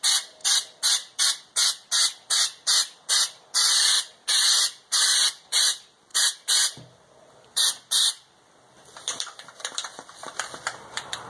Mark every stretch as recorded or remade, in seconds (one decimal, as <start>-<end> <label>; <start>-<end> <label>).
0.0-11.3 recorded